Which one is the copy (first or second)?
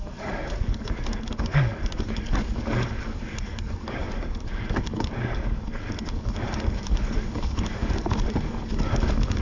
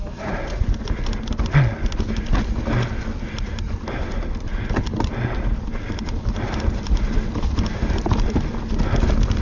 first